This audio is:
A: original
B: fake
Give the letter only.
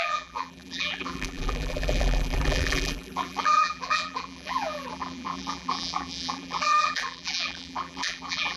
B